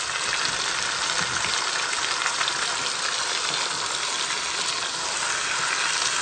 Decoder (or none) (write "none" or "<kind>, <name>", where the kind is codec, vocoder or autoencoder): none